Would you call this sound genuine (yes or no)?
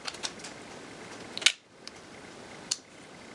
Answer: yes